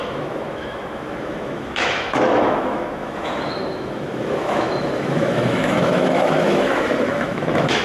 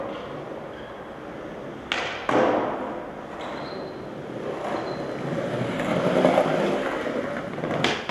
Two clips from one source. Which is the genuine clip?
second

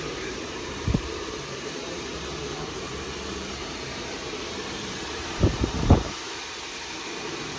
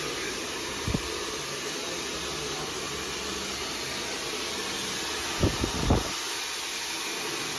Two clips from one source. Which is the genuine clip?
second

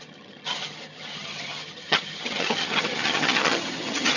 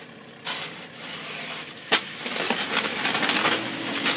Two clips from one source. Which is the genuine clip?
second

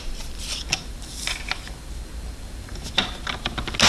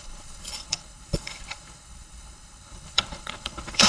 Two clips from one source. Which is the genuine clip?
first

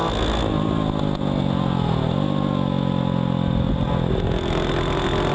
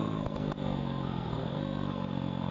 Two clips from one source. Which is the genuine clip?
first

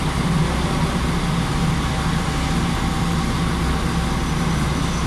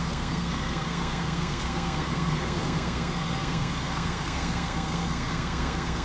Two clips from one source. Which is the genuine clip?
first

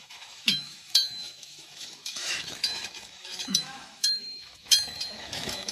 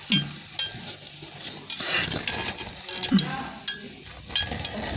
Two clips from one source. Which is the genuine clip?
second